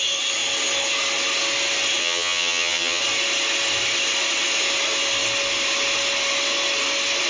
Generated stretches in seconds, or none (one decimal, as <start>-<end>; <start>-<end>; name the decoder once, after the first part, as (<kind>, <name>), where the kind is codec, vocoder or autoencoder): 2.0-3.0 (vocoder, HiFi-GAN)